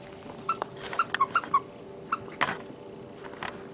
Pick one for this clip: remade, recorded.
recorded